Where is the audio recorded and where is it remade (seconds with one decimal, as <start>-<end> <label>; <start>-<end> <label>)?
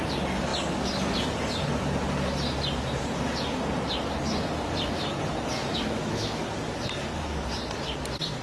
0.0-5.7 recorded; 5.7-6.4 remade; 6.4-8.4 recorded